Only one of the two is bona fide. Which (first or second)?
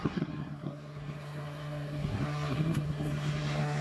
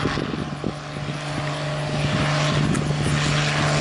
second